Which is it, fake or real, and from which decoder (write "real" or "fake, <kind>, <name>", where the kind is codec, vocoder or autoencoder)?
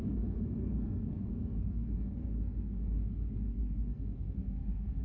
fake, codec, SNAC